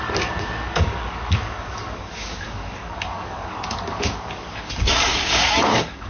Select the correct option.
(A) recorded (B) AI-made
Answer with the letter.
B